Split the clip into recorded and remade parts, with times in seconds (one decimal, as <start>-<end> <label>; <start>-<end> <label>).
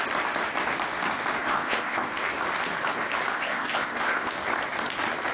0.0-1.4 recorded; 1.4-2.1 remade; 2.1-3.3 recorded; 3.3-4.3 remade; 4.3-5.3 recorded